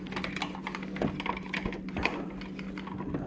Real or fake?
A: real